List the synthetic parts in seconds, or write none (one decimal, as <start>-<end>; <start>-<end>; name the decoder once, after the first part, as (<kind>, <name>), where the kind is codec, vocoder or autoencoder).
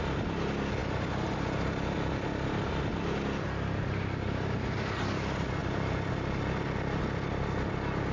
none